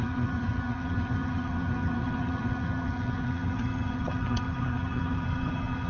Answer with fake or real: fake